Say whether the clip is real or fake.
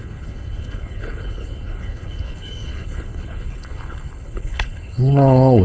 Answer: fake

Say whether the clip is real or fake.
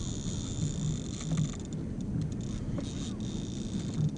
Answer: real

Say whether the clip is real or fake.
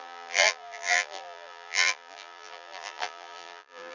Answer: fake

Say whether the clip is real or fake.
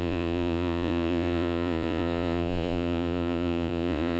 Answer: fake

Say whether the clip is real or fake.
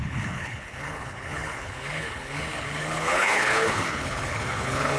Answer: fake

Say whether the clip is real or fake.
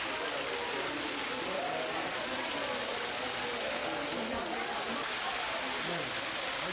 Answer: real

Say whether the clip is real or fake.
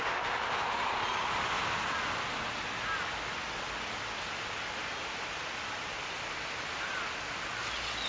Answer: real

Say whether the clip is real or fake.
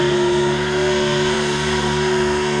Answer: fake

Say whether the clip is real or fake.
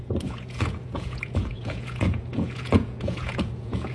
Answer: fake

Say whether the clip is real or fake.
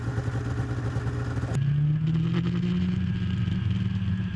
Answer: real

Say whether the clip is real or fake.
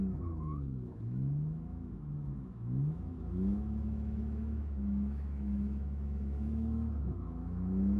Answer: fake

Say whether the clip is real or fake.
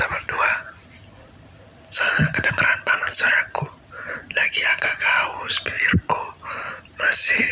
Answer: fake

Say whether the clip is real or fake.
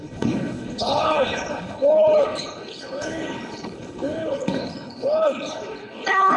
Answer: fake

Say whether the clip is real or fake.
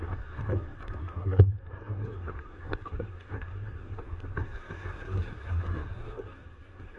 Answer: fake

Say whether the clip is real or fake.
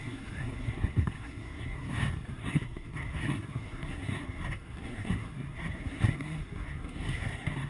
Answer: fake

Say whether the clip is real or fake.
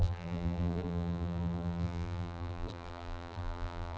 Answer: fake